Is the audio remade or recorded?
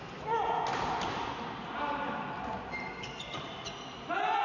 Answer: recorded